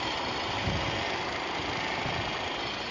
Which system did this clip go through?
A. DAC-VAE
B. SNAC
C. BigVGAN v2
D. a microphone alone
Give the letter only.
D